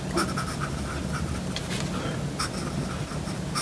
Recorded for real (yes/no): yes